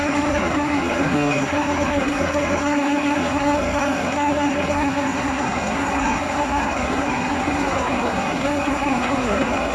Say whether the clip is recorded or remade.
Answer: remade